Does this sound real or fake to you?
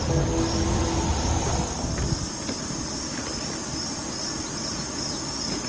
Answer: real